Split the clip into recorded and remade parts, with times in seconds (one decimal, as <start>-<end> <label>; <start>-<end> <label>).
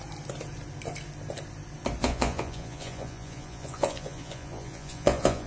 0.0-2.0 recorded; 2.0-5.5 remade